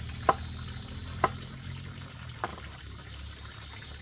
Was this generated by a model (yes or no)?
no